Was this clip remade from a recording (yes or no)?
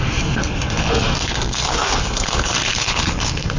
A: yes